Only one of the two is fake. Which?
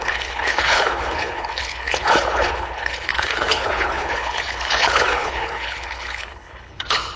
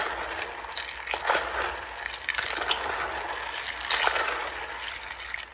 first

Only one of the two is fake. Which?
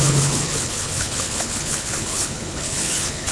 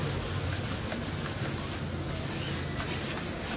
first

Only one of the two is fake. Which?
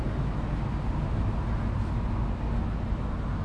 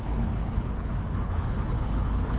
second